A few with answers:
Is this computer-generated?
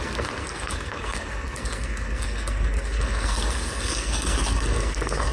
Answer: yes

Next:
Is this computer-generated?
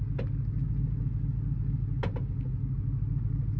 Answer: no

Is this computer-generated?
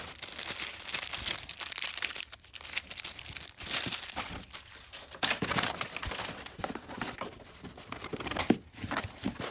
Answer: no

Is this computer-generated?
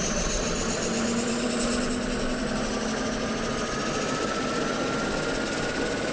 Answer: no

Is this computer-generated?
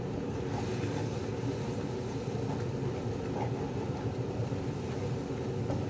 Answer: no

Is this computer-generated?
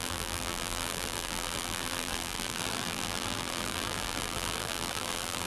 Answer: yes